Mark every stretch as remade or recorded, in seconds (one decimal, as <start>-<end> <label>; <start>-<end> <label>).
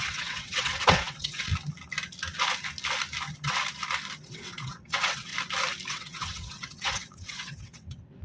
0.0-1.5 remade; 1.5-4.2 recorded; 4.2-5.3 remade; 5.3-5.9 recorded; 5.9-8.2 remade